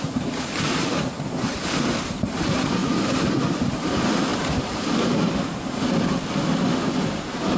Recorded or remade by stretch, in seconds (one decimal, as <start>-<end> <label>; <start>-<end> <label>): 0.0-7.6 recorded

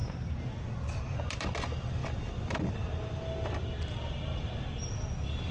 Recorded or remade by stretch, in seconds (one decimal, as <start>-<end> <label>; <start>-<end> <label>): 0.0-5.5 recorded

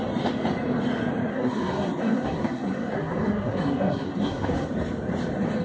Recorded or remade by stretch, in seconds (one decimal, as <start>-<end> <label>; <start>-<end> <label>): 0.0-1.3 recorded; 1.3-4.7 remade; 4.7-5.6 recorded

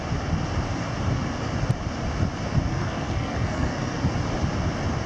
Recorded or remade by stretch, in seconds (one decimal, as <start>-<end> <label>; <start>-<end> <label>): 0.0-2.7 recorded; 2.7-4.1 remade; 4.1-5.1 recorded

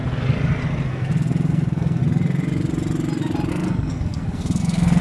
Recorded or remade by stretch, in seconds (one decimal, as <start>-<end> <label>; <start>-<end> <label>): 0.0-0.9 recorded; 0.9-2.0 remade; 2.0-3.5 recorded; 3.5-5.0 remade

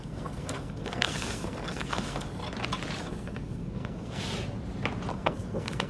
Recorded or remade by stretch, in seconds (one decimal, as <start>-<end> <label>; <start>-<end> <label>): 0.0-2.4 remade; 2.4-3.0 recorded; 3.0-4.2 remade; 4.2-5.1 recorded; 5.1-5.9 remade

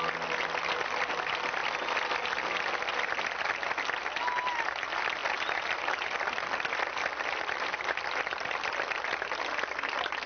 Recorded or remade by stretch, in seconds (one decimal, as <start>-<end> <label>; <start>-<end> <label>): 0.0-10.3 recorded

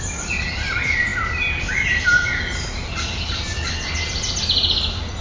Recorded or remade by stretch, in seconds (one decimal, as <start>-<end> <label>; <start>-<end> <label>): 0.0-5.2 recorded